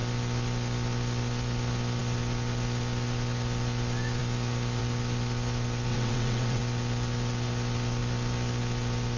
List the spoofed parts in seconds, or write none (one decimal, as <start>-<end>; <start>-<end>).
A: 5.9-6.6